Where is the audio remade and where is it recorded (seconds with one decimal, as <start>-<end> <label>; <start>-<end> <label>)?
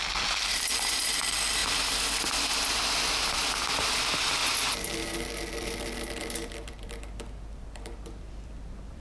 0.0-1.6 remade; 1.6-4.0 recorded; 4.0-4.4 remade; 4.4-5.5 recorded; 5.5-9.0 remade